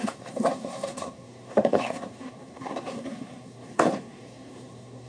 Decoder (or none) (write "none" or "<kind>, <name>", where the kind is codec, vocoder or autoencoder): codec, SNAC